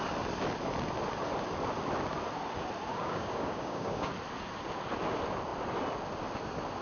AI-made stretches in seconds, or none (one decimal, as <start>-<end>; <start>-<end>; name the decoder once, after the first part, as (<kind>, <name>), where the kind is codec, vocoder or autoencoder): 2.9-4.1 (codec, DAC)